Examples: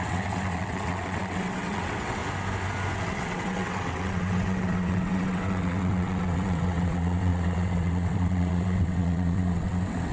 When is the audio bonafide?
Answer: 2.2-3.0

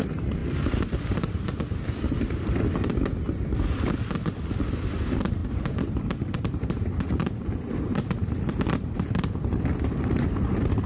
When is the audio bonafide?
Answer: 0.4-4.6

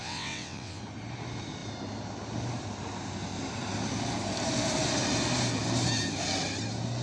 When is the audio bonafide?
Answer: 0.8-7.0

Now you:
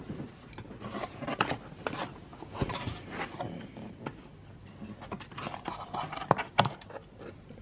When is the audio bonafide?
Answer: 0.0-7.6